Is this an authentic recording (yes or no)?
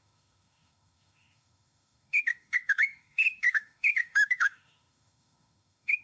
no